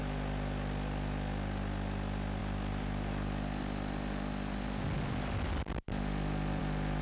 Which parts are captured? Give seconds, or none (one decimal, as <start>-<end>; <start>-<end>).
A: 0.0-7.0